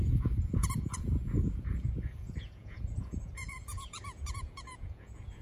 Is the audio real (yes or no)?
no